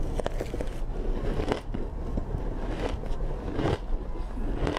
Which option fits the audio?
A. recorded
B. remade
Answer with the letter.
A